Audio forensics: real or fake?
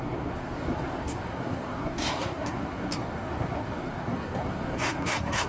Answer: fake